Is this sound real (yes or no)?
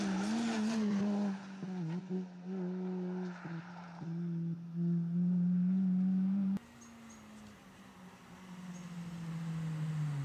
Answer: yes